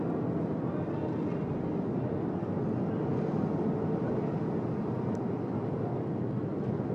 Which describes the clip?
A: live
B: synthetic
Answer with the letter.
A